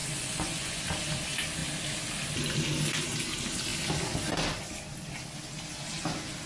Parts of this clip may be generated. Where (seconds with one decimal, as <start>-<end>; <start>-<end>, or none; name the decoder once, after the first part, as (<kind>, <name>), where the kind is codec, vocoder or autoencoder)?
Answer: 0.0-0.8 (vocoder, Vocos)